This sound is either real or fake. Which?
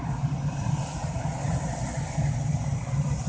real